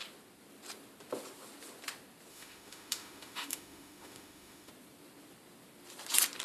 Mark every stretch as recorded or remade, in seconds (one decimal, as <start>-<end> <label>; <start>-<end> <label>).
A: 0.0-2.3 recorded; 2.3-4.7 remade; 4.7-6.4 recorded